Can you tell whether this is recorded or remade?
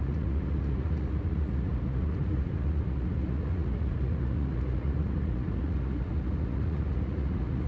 remade